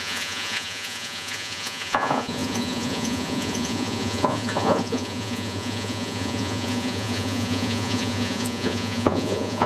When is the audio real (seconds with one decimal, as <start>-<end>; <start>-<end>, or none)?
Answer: none